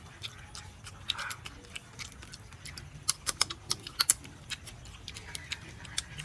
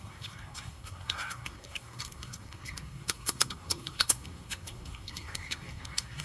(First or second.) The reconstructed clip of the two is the second